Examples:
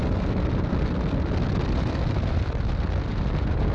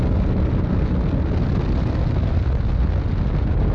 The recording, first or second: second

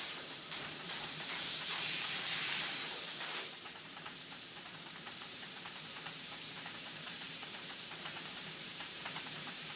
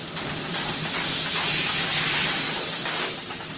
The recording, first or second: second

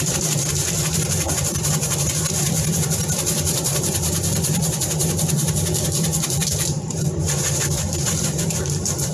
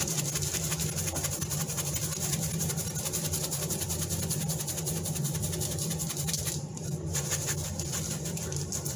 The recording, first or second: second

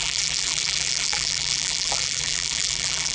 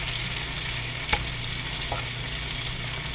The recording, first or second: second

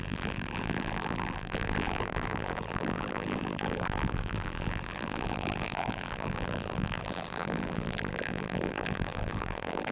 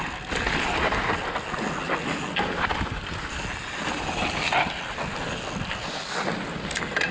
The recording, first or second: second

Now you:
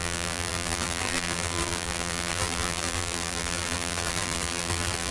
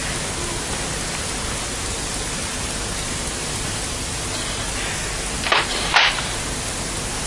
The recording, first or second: second